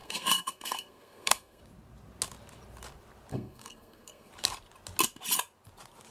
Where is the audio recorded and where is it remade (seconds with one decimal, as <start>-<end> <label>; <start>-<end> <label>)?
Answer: 0.0-1.6 remade; 1.6-3.3 recorded; 3.3-4.3 remade; 4.3-6.1 recorded